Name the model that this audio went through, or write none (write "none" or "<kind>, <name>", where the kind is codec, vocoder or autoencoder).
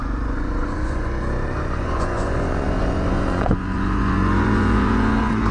vocoder, Vocos